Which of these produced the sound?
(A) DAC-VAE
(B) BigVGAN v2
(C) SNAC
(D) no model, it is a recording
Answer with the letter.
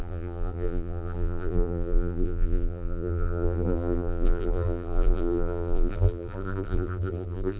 B